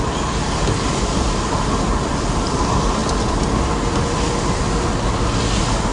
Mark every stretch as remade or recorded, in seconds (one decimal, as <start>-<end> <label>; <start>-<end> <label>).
0.0-5.9 recorded